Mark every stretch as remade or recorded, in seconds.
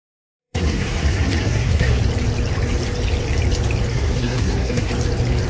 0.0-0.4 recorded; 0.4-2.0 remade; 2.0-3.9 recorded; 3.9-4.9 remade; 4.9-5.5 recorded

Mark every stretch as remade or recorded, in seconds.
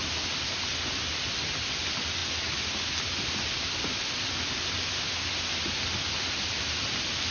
0.0-7.3 recorded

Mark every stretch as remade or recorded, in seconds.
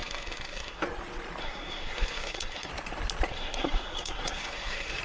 0.0-0.8 remade; 0.8-1.4 recorded; 1.4-2.7 remade; 2.7-3.3 recorded; 3.3-5.0 remade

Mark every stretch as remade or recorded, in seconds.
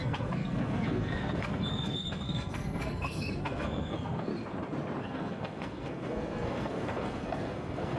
0.0-4.3 remade; 4.3-5.0 recorded; 5.0-8.0 remade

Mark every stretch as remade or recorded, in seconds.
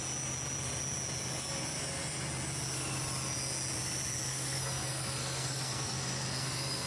0.0-4.3 recorded; 4.3-6.9 remade